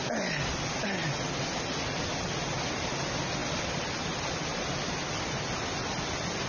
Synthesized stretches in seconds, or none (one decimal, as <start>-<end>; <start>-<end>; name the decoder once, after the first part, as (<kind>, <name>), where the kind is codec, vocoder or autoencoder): none